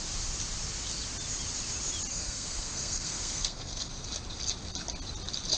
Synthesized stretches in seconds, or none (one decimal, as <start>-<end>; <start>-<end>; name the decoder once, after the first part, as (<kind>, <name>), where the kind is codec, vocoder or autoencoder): 2.1-3.9 (codec, SNAC)